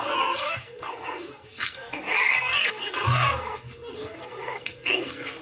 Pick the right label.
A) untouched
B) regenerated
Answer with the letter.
B